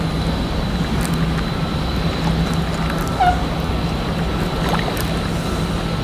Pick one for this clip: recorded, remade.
recorded